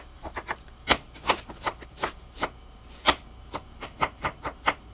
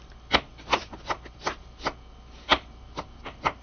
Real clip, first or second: second